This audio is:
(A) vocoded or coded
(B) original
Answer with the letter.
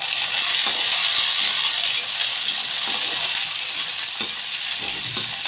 B